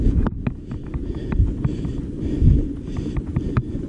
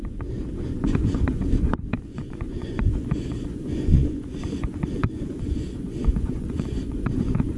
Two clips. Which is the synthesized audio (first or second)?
second